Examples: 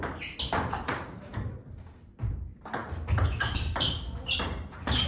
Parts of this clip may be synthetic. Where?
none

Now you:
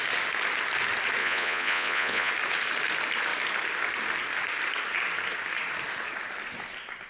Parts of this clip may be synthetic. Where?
1.2-2.3 (vocoder, Vocos)

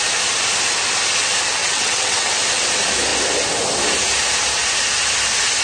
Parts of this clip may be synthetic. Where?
1.6-2.3 (vocoder, WaveNeXt)

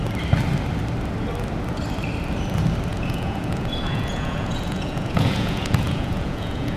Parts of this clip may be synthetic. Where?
2.9-6.8 (vocoder, Vocos)

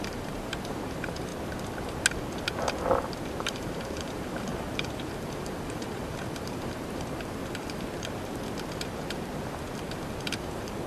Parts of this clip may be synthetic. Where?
0.0-1.3 (vocoder, BigVGAN v2); 3.4-7.4; 10.4-10.9

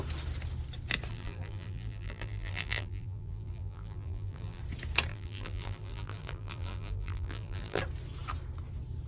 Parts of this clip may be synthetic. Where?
1.1-4.6 (vocoder, BigVGAN v2); 5.1-7.8